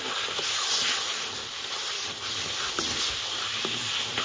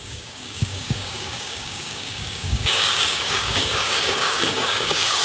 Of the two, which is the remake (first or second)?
second